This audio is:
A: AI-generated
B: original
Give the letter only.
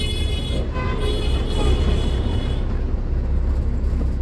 B